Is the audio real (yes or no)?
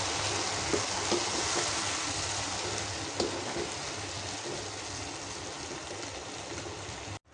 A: yes